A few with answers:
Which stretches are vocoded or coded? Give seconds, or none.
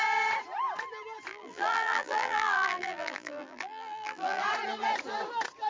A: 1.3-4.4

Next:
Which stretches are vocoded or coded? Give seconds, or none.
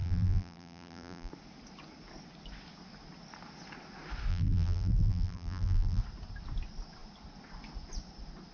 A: 0.0-1.3; 4.3-6.0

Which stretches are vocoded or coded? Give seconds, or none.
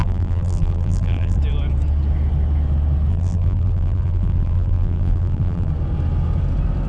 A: 0.0-1.4; 3.1-5.7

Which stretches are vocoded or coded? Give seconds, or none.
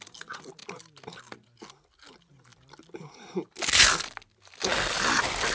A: none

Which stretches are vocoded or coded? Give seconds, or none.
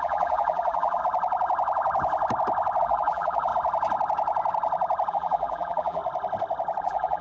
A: 0.0-1.0; 2.8-3.5; 5.1-6.0; 6.8-7.2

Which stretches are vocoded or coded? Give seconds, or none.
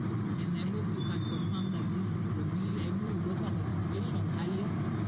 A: 0.0-0.5; 3.0-5.1